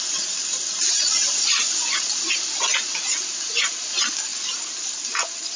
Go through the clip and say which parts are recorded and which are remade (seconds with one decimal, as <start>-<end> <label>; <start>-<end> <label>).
0.0-0.4 recorded; 0.4-1.8 remade; 1.8-3.1 recorded; 3.1-3.7 remade; 3.7-4.3 recorded; 4.3-5.6 remade